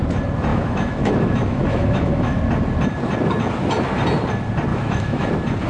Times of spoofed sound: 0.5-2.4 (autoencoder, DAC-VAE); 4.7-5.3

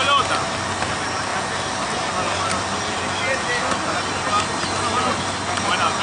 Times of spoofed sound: none

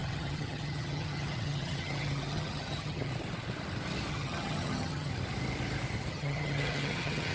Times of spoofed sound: 0.0-3.1 (vocoder, HiFi-GAN); 4.1-5.1; 6.1-7.3

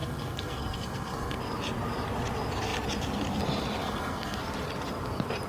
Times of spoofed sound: 0.0-1.4 (codec, SNAC); 3.8-4.4

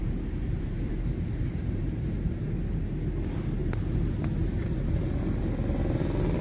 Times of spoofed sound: 0.0-2.5 (vocoder, BigVGAN v2)

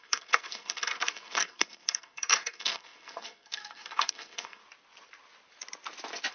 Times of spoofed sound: 0.0-4.6 (codec, SNAC)